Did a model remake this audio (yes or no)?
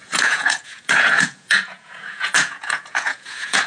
yes